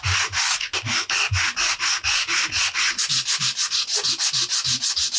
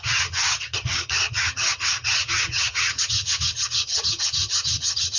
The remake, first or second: second